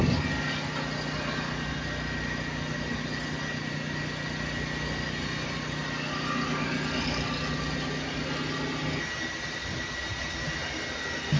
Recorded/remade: recorded